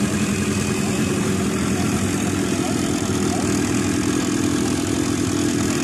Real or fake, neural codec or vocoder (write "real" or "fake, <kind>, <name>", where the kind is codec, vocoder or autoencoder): real